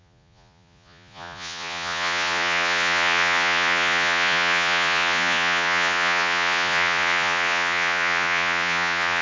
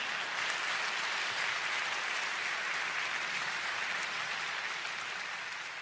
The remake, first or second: first